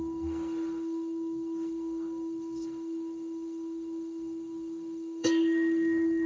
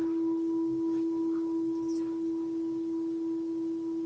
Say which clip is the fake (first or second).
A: first